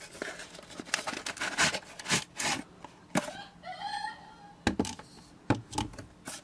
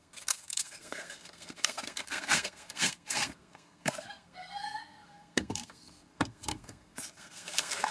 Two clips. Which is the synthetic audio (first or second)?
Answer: second